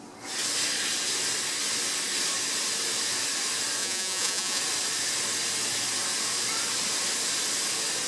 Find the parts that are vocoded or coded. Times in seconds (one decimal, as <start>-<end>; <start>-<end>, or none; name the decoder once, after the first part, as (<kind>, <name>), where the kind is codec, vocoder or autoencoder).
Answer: 3.8-4.6 (vocoder, Vocos)